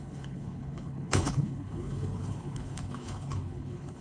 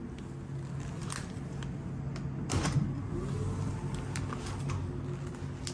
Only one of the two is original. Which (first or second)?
second